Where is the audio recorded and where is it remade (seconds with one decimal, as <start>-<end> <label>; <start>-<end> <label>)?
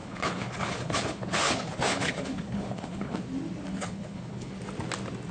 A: 0.0-3.2 remade; 3.2-3.7 recorded; 3.7-4.5 remade; 4.5-5.3 recorded